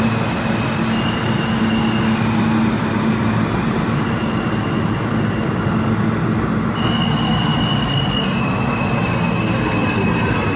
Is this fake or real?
real